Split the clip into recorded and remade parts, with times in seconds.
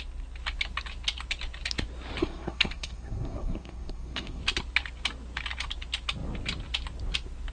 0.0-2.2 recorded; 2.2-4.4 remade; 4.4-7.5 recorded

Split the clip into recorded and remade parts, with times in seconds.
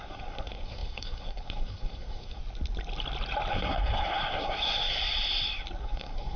0.0-2.4 remade; 2.4-3.5 recorded; 3.5-5.0 remade; 5.0-5.8 recorded; 5.8-6.4 remade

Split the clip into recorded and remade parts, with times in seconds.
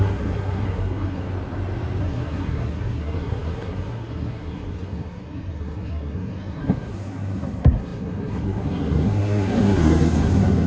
0.0-1.3 remade; 1.3-2.0 recorded; 2.0-10.7 remade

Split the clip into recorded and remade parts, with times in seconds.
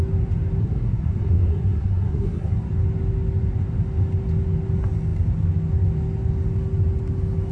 0.0-0.6 recorded; 0.6-2.5 remade; 2.5-7.5 recorded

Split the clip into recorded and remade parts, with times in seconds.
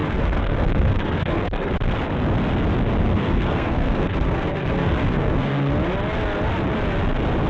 0.0-1.7 remade; 1.7-3.0 recorded; 3.0-5.7 remade; 5.7-7.5 recorded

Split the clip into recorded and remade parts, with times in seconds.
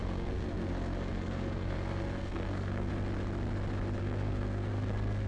0.0-2.9 remade; 2.9-4.0 recorded; 4.0-5.3 remade